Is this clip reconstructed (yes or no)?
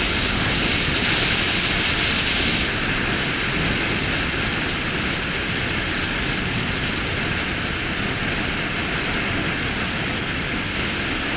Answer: no